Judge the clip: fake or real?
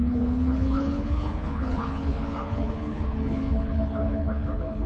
fake